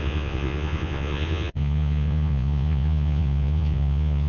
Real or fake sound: fake